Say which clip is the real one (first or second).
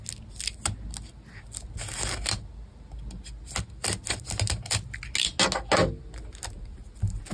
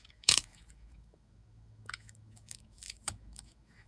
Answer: first